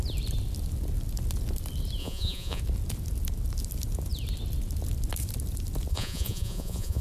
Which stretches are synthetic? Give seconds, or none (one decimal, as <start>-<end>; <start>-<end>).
2.0-2.6; 5.9-7.0